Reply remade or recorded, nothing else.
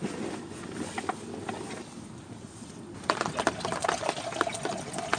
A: recorded